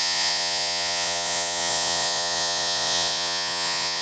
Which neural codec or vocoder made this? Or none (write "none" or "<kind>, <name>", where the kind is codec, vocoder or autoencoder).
vocoder, Vocos